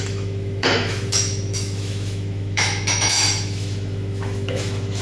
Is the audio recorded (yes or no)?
no